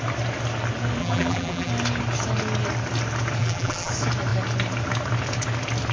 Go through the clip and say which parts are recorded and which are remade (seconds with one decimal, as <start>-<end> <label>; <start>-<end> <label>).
0.0-1.0 recorded; 1.0-1.7 remade; 1.7-3.4 recorded; 3.4-3.9 remade; 3.9-5.9 recorded